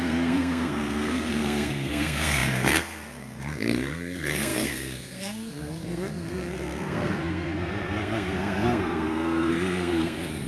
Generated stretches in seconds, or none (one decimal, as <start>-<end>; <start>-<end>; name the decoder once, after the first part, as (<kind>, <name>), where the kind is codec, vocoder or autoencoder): 0.0-10.5 (codec, SNAC)